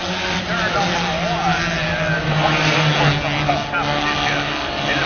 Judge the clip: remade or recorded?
recorded